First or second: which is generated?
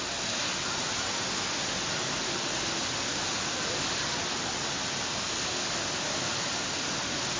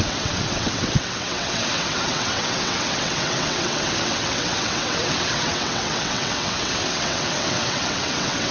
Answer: second